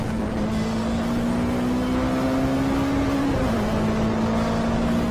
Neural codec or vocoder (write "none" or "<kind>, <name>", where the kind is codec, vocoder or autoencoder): none